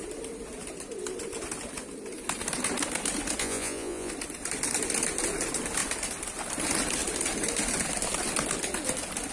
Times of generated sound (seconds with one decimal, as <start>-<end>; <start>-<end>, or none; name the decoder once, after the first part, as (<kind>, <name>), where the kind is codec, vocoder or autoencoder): 3.4-4.1 (vocoder, Vocos)